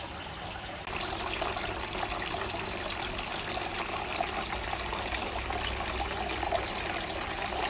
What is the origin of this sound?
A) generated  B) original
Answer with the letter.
B